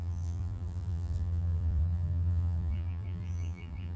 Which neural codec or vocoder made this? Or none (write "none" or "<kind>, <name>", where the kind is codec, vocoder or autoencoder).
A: vocoder, BigVGAN v2